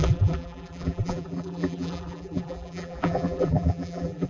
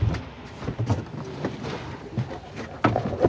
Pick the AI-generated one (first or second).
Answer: first